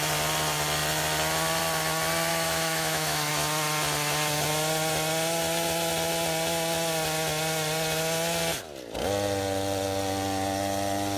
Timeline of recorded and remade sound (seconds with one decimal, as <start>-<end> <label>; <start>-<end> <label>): 0.0-2.3 recorded; 2.3-3.3 remade; 3.3-11.2 recorded